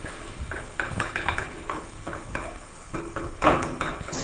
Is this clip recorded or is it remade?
remade